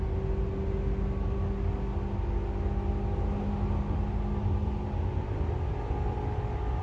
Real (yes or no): yes